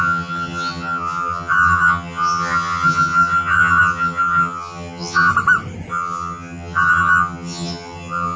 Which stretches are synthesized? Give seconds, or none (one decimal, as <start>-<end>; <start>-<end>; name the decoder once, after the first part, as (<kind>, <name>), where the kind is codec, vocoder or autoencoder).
0.0-5.3 (vocoder, HiFi-GAN); 5.9-8.4